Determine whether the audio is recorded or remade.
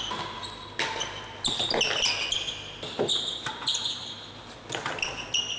recorded